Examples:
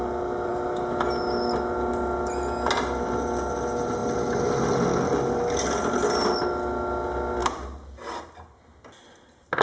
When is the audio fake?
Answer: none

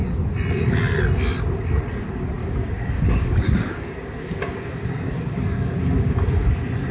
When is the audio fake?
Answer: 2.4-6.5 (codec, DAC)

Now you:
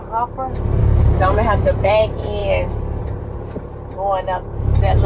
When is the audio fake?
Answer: 0.8-1.9 (codec, DAC)

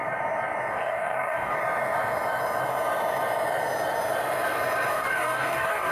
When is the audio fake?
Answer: 0.7-1.6 (codec, DAC); 4.9-5.9

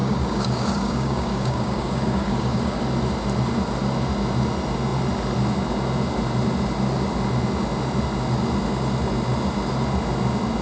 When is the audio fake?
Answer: 0.0-2.8 (codec, DAC)